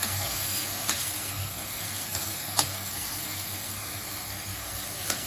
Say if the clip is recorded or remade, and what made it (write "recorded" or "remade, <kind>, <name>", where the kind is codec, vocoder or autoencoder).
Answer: remade, codec, SNAC